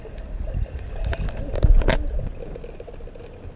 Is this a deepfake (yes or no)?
no